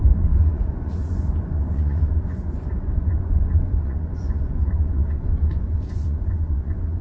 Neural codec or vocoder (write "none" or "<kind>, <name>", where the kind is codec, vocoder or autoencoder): vocoder, Vocos